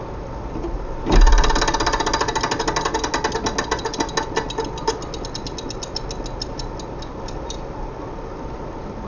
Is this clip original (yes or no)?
yes